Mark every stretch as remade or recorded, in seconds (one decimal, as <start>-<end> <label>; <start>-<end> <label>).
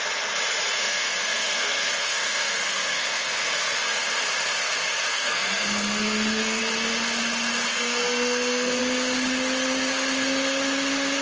0.0-0.8 recorded; 0.8-4.1 remade; 4.1-5.1 recorded; 5.1-6.6 remade; 6.6-7.7 recorded; 7.7-8.8 remade; 8.8-11.2 recorded